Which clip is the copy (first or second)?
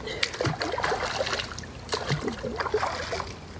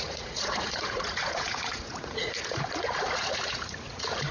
second